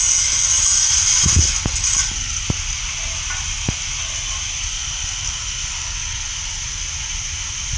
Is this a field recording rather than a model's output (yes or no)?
yes